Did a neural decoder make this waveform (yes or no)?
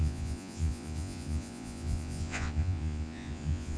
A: yes